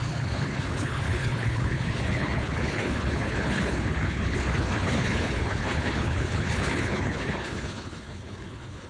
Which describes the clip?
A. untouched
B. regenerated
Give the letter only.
B